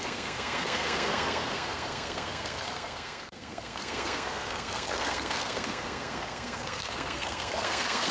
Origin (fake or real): fake